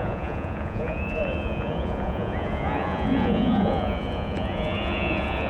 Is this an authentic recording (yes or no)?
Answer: no